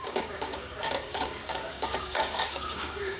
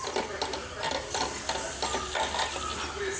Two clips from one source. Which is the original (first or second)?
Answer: second